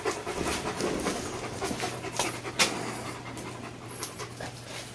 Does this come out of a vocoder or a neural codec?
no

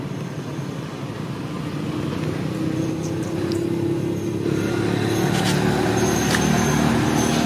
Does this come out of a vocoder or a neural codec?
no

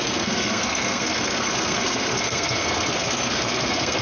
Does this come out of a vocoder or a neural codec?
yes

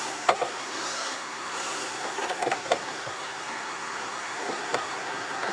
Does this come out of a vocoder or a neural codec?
yes